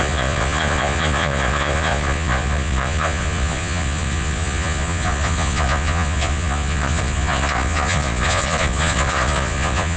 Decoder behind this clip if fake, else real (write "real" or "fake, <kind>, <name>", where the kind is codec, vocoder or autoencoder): fake, vocoder, Vocos